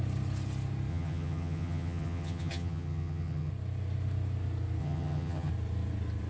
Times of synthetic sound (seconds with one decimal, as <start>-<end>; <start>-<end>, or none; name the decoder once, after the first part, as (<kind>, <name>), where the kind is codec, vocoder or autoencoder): 0.9-3.5 (vocoder, HiFi-GAN); 4.8-5.5